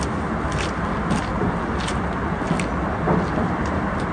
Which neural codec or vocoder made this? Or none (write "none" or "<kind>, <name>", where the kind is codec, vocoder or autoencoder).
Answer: none